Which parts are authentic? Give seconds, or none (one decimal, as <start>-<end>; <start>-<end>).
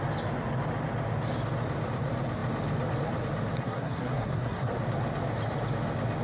0.0-3.6; 4.7-6.2